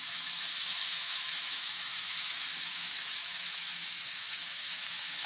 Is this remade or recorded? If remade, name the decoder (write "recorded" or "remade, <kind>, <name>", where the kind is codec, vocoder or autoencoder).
remade, autoencoder, DAC-VAE